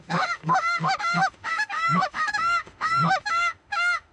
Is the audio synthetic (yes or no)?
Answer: yes